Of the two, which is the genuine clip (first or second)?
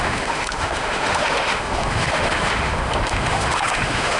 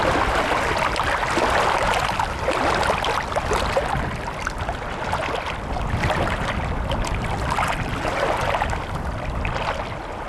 second